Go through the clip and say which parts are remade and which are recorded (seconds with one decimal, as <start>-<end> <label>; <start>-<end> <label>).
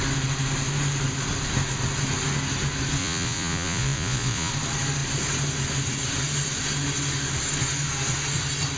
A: 0.0-3.0 recorded; 3.0-4.5 remade; 4.5-8.8 recorded